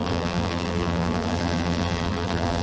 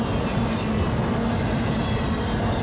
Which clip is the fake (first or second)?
first